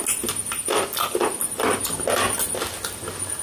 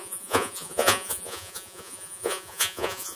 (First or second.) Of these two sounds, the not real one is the second